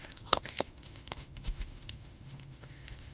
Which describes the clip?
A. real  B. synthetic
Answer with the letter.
B